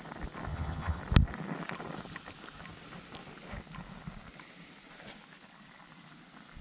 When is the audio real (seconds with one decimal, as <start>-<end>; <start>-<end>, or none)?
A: 0.0-0.5; 1.0-6.6